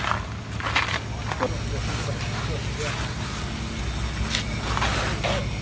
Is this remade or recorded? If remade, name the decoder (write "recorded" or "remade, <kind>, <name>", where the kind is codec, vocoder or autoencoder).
recorded